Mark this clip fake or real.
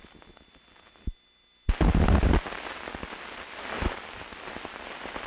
real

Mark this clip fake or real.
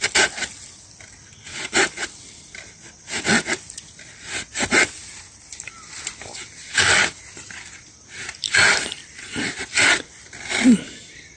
real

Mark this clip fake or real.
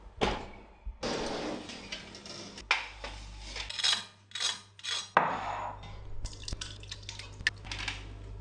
real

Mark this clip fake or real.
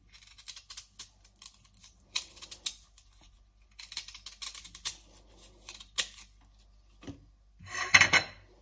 real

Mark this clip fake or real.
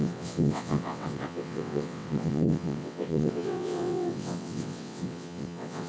fake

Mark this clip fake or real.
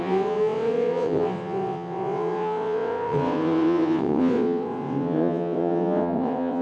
fake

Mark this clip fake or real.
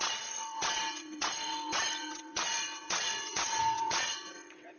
fake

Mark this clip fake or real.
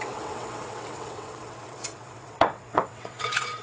fake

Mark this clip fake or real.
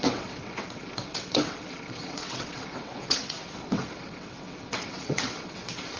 fake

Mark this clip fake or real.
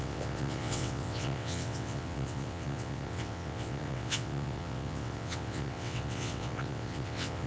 fake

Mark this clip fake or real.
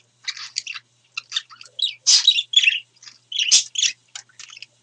real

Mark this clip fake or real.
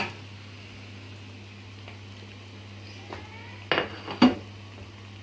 real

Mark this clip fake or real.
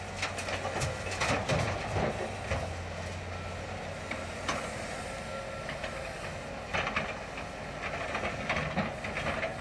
real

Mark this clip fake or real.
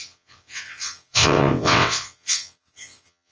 fake